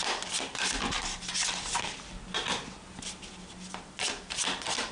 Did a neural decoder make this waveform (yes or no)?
no